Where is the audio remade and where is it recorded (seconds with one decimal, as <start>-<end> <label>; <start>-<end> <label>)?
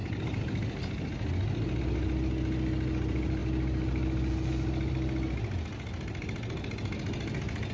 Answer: 0.0-7.7 recorded